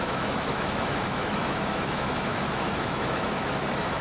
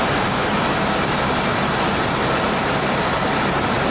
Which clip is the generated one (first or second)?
first